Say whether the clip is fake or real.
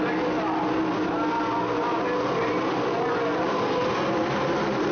real